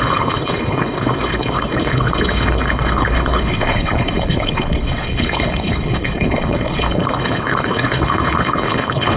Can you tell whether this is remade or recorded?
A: remade